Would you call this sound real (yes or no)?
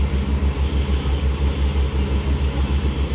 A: yes